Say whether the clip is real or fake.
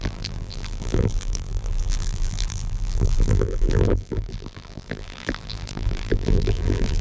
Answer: fake